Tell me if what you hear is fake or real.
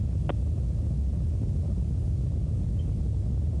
real